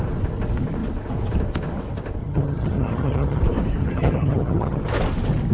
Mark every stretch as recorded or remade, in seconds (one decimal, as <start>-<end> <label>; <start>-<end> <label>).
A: 0.0-2.2 recorded; 2.2-3.4 remade; 3.4-3.8 recorded; 3.8-4.8 remade; 4.8-5.5 recorded